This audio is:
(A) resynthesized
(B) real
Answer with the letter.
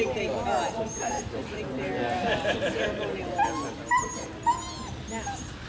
B